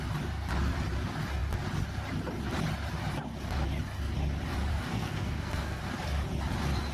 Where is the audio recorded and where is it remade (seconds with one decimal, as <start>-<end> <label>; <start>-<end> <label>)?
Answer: 0.0-4.7 recorded; 4.7-5.8 remade; 5.8-6.9 recorded